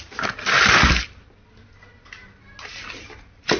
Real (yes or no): yes